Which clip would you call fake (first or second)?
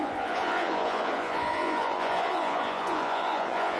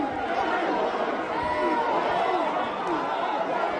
first